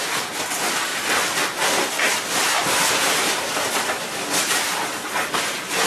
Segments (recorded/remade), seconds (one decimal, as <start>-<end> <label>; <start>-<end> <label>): 0.0-5.9 recorded